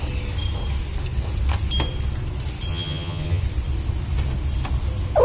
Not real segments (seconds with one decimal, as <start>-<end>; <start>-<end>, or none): 2.7-3.4